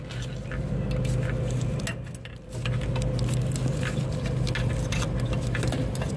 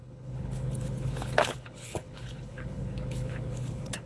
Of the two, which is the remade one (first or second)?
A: second